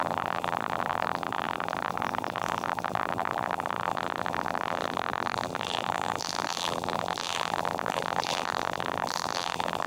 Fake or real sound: fake